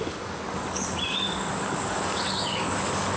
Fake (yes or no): yes